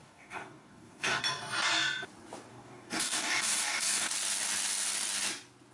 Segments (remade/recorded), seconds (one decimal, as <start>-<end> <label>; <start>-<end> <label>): 0.0-1.2 remade; 1.2-2.5 recorded; 2.5-4.1 remade; 4.1-5.7 recorded